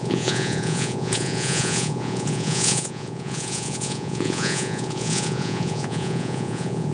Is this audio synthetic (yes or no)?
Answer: yes